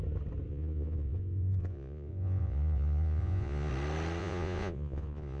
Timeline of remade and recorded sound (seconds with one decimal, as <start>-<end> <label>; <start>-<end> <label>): 0.0-0.5 recorded; 0.5-3.7 remade; 3.7-4.2 recorded; 4.2-5.4 remade